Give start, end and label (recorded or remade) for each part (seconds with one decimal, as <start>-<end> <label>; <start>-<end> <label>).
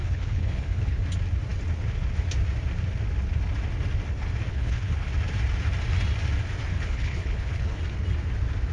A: 0.0-1.0 remade; 1.0-4.5 recorded; 4.5-5.1 remade; 5.1-6.7 recorded; 6.7-7.8 remade; 7.8-8.7 recorded